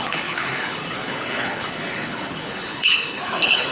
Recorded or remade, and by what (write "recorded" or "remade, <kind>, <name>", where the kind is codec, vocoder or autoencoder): remade, codec, HILCodec